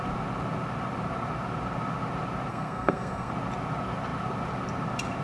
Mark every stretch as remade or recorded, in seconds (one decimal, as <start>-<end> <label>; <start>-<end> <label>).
0.0-2.5 recorded; 2.5-3.3 remade; 3.3-5.2 recorded